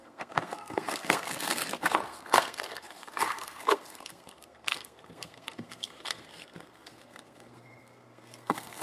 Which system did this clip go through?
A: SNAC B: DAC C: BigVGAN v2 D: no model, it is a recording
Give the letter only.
A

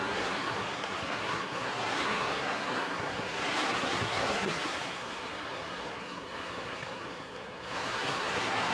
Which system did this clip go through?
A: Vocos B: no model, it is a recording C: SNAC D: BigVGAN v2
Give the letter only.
C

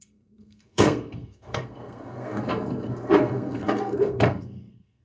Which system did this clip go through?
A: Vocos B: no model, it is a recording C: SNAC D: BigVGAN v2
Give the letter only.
C